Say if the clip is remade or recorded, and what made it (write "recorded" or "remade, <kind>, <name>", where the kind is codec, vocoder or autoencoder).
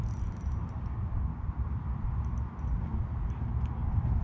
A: recorded